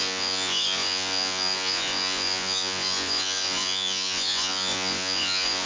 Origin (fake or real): fake